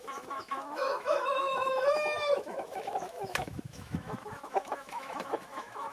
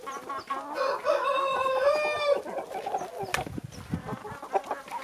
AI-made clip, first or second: first